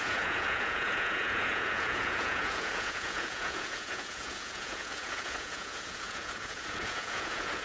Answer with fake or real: fake